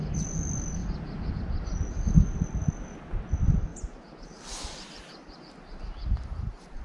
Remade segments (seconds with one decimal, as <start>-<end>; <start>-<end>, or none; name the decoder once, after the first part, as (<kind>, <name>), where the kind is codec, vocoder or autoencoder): 0.8-1.3 (vocoder, BigVGAN v2); 3.7-6.8